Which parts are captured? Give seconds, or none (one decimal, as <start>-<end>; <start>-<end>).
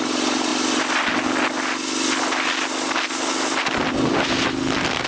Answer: 0.0-5.1